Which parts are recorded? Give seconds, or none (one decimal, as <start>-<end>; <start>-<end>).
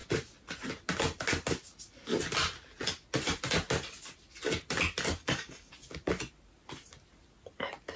0.0-5.2; 5.7-8.0